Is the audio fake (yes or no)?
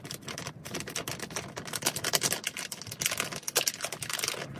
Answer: no